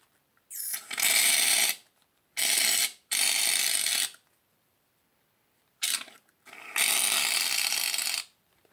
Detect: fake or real fake